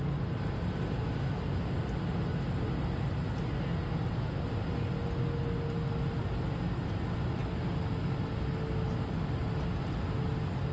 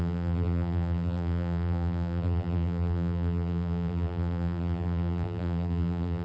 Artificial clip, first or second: second